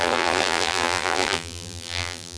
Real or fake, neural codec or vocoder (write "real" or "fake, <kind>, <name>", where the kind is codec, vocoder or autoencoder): fake, vocoder, BigVGAN v2